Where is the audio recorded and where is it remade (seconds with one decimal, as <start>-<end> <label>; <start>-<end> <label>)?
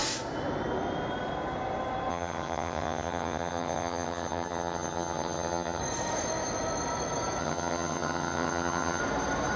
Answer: 0.0-2.1 recorded; 2.1-5.8 remade; 5.8-7.4 recorded; 7.4-9.0 remade; 9.0-9.6 recorded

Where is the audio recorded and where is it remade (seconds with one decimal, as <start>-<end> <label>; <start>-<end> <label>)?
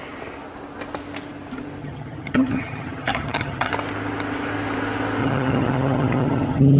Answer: 0.0-1.8 recorded; 1.8-3.7 remade; 3.7-5.2 recorded; 5.2-6.8 remade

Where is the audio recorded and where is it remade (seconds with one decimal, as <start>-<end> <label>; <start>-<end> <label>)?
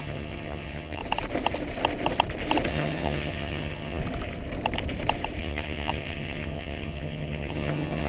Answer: 0.0-1.0 remade; 1.0-2.7 recorded; 2.7-4.0 remade; 4.0-5.4 recorded; 5.4-8.1 remade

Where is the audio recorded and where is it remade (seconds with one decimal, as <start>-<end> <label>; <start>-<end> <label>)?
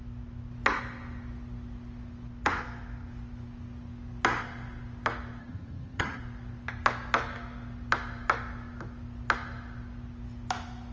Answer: 0.0-5.4 recorded; 5.4-6.2 remade; 6.2-10.9 recorded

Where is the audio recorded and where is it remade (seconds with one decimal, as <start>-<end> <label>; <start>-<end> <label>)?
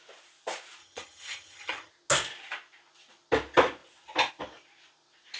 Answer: 0.0-0.8 recorded; 0.8-1.9 remade; 1.9-5.4 recorded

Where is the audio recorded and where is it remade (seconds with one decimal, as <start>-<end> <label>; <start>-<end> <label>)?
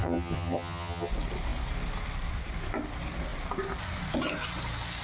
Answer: 0.0-1.1 remade; 1.1-5.0 recorded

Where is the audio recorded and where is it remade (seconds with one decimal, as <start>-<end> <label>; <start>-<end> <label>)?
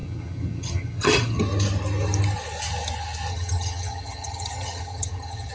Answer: 0.0-1.4 remade; 1.4-3.3 recorded; 3.3-5.5 remade